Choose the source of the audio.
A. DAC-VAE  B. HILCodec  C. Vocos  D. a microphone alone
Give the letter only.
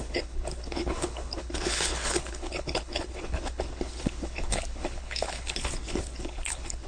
B